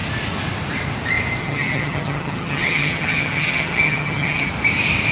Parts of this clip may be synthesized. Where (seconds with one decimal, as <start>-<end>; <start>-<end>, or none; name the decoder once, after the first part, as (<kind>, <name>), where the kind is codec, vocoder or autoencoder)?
1.4-4.5 (vocoder, HiFi-GAN)

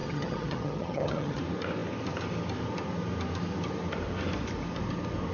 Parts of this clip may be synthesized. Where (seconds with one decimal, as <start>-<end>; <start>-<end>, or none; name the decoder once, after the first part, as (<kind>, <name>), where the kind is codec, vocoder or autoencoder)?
0.0-1.4 (vocoder, HiFi-GAN)

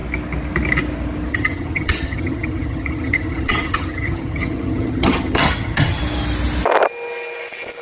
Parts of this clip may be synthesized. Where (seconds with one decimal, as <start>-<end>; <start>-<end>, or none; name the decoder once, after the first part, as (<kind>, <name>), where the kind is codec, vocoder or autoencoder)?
1.3-6.0 (vocoder, HiFi-GAN)

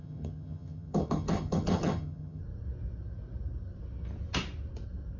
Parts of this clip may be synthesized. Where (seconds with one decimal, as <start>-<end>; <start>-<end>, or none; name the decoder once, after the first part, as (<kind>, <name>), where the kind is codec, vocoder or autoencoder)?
0.0-2.4 (vocoder, HiFi-GAN)

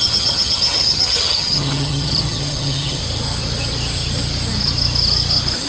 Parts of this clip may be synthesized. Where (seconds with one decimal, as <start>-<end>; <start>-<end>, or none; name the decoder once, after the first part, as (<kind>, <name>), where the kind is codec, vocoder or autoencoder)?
0.0-3.0 (vocoder, HiFi-GAN)

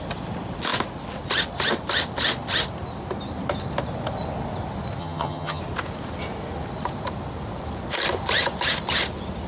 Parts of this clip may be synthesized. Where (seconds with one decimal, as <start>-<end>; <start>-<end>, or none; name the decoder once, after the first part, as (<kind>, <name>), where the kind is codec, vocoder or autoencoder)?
5.0-5.6 (vocoder, HiFi-GAN)

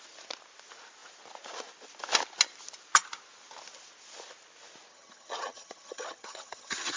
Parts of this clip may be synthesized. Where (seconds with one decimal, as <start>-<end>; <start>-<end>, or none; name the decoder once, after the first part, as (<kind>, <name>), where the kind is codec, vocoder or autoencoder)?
4.9-7.0 (vocoder, HiFi-GAN)